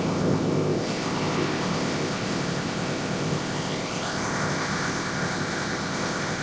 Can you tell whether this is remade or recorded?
remade